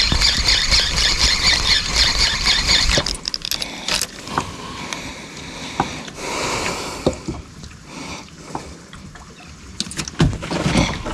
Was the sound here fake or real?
real